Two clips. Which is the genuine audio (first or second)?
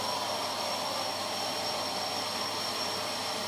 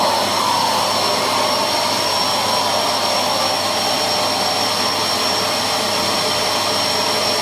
second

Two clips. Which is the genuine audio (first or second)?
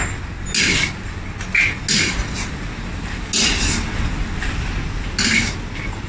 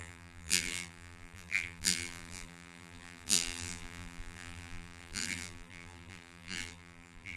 first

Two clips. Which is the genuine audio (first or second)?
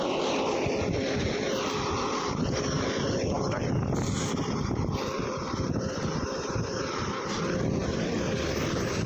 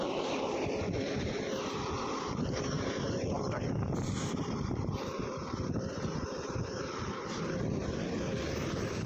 first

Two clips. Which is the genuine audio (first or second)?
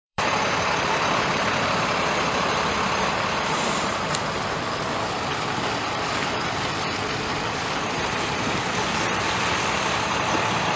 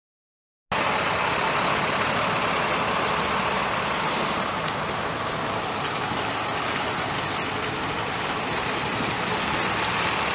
second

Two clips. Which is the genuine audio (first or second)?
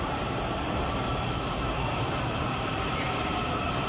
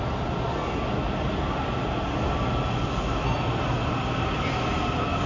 second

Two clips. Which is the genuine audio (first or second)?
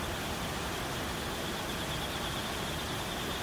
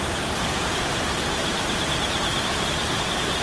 first